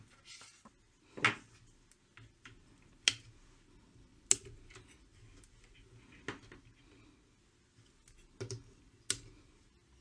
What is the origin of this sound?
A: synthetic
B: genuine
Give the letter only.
B